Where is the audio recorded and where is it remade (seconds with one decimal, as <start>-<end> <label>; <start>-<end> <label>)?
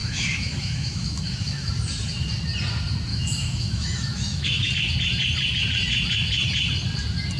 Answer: 0.0-1.7 remade; 1.7-3.1 recorded; 3.1-4.7 remade; 4.7-7.4 recorded